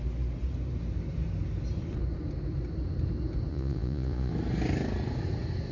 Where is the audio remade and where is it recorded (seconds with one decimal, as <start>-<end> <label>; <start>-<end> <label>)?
0.0-3.5 recorded; 3.5-4.3 remade; 4.3-5.7 recorded